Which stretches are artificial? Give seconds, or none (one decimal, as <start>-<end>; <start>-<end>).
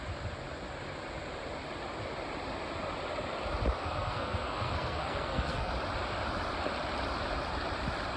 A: 3.8-5.7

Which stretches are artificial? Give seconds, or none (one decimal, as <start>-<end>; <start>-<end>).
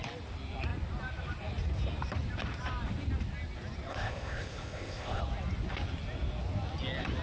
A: 3.9-5.2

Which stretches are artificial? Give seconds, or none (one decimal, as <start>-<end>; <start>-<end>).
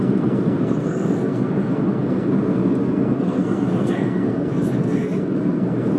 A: 0.0-6.0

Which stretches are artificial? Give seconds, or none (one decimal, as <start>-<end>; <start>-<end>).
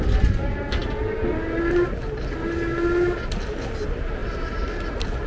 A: none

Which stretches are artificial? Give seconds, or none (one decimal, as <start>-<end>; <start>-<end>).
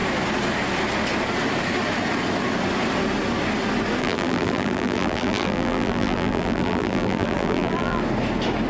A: 4.0-8.0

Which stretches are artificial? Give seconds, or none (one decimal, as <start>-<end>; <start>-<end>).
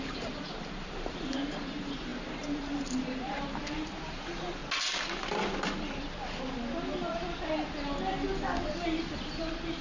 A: 0.0-4.6; 8.7-9.8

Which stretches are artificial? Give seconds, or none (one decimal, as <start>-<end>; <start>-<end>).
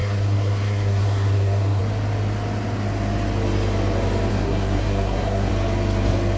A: 0.0-1.8; 4.3-5.5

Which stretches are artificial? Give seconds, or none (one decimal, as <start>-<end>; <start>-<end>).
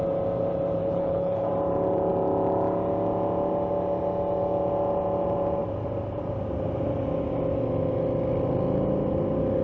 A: 0.8-1.5